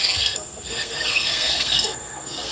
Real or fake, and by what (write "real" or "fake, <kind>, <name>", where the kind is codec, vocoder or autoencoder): fake, codec, SNAC